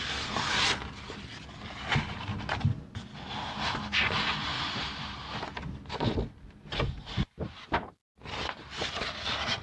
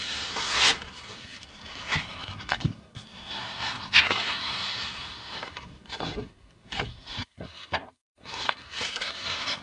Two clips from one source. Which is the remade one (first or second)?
second